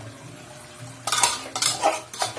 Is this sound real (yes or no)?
yes